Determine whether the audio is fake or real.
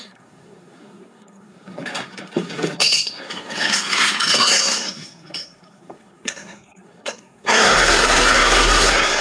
fake